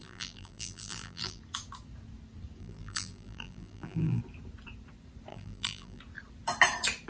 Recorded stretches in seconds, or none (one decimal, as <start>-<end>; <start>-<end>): 1.4-2.6; 4.2-5.3; 6.0-7.1